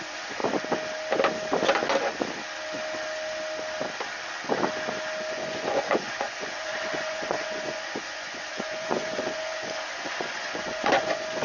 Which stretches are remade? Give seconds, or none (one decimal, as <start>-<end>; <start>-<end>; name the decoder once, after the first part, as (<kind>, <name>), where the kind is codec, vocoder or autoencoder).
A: 0.0-0.4 (vocoder, Vocos); 5.3-11.4